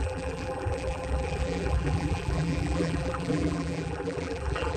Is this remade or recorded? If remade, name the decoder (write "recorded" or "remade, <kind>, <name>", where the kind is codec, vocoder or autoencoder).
remade, vocoder, BigVGAN v2